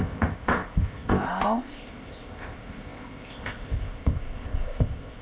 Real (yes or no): no